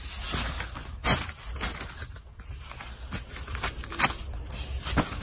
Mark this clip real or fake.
real